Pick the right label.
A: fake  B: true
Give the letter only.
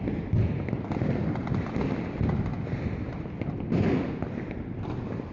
B